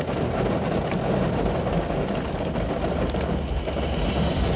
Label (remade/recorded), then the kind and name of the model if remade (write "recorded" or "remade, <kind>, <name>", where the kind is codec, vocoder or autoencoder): recorded